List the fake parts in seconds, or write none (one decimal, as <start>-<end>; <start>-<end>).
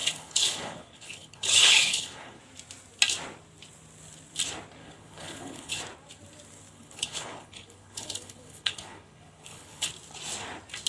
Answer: 0.0-2.4; 4.8-5.8; 6.7-9.9